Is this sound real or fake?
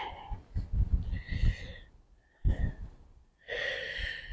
real